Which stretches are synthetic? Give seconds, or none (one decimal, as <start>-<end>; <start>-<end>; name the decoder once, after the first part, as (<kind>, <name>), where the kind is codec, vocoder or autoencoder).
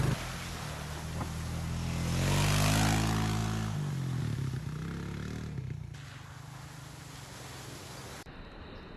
none